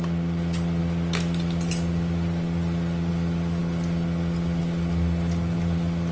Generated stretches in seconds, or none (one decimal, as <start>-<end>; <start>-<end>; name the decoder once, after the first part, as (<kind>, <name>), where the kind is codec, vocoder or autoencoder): none